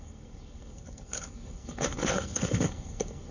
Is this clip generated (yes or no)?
yes